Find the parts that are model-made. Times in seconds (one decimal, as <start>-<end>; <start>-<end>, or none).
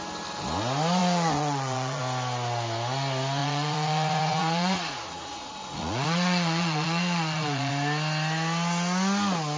1.0-2.0; 3.4-7.7